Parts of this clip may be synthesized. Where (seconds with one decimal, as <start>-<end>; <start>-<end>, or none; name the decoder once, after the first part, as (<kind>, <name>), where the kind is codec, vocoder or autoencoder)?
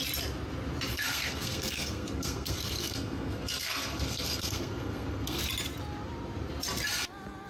0.9-5.4 (codec, SNAC)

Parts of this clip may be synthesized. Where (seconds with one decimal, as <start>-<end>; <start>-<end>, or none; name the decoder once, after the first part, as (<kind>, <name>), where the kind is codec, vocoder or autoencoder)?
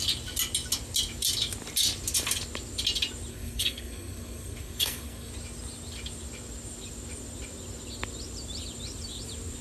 3.3-5.3 (codec, SNAC)